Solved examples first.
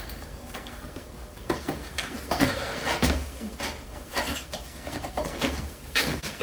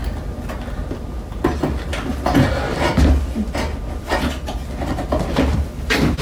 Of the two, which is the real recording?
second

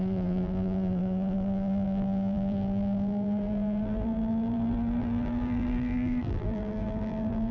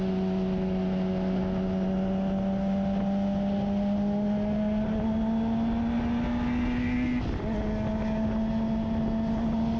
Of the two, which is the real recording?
second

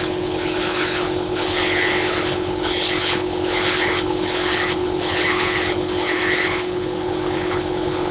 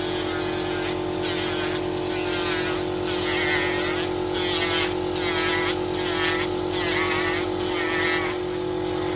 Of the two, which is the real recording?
second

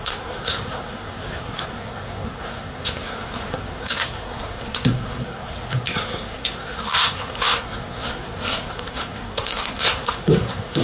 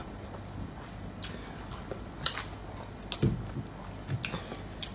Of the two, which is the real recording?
second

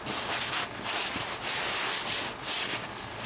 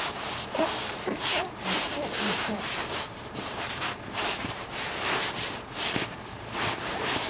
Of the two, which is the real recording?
first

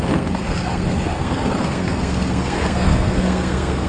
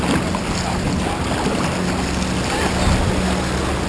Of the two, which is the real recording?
second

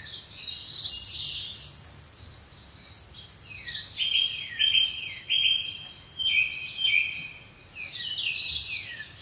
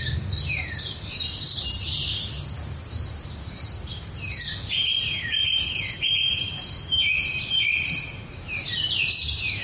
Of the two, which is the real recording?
first